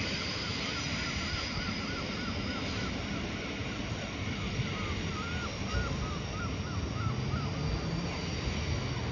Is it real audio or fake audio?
real